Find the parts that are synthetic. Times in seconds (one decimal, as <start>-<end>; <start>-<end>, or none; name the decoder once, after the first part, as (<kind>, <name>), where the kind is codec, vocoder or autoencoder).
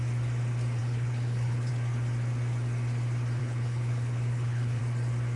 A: 0.8-1.7 (codec, HILCodec); 3.4-4.8